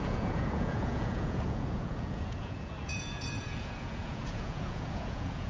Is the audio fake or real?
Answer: fake